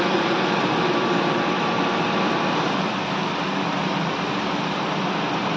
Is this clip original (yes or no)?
yes